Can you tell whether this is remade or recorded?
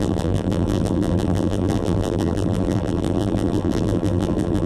remade